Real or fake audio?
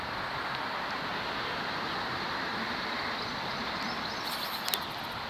real